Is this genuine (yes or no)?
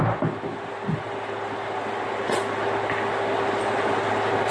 yes